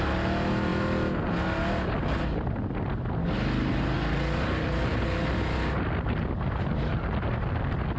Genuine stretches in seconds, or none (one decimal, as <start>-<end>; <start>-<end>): 0.0-8.0